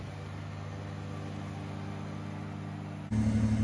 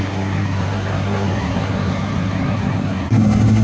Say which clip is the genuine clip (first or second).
first